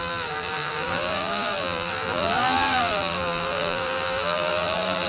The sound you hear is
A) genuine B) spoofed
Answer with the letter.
B